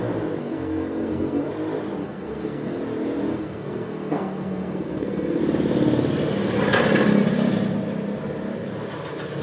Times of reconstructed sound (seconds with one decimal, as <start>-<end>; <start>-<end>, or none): 0.4-1.5; 2.0-2.8; 3.3-5.4